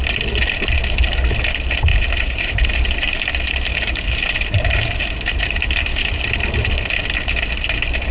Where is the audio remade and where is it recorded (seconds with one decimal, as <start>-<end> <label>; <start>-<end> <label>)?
0.0-1.9 recorded; 1.9-6.1 remade; 6.1-8.1 recorded